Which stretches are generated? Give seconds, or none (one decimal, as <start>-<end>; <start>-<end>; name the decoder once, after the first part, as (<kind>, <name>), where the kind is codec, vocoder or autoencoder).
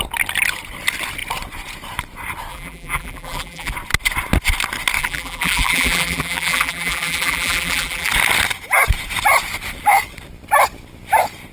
2.5-3.7 (vocoder, BigVGAN v2); 5.0-8.1